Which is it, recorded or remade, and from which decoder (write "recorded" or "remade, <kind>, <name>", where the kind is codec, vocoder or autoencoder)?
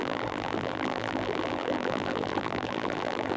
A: remade, vocoder, BigVGAN v2